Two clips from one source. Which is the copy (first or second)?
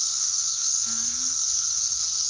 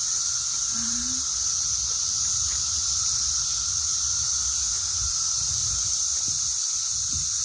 first